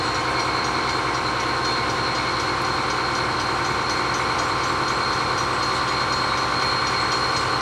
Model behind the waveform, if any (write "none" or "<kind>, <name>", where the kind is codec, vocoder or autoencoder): none